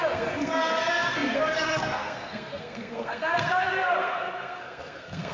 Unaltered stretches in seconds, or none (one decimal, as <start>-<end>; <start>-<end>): none